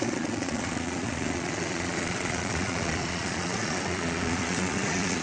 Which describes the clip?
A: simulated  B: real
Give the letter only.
A